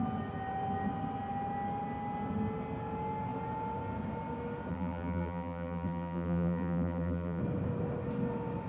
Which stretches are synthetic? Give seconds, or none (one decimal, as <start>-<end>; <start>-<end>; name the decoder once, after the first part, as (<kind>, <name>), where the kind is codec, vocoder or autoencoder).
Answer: 4.7-7.4 (vocoder, BigVGAN v2)